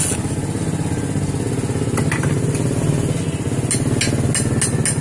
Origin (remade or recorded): recorded